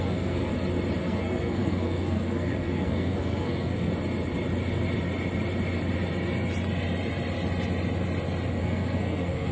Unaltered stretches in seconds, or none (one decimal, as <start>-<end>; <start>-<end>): 0.5-1.0; 3.9-8.6